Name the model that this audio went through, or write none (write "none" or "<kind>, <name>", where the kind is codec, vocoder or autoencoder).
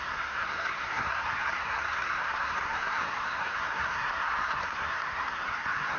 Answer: codec, SNAC